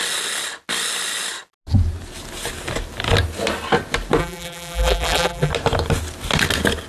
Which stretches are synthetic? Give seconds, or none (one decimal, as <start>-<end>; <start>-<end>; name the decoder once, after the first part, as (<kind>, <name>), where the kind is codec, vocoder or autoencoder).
4.2-5.5 (vocoder, BigVGAN v2)